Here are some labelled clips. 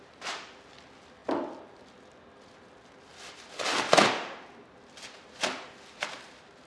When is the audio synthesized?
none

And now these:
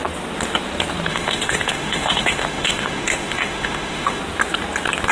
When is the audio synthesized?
1.1-4.2